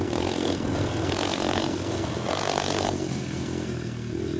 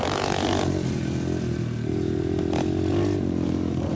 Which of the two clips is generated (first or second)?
first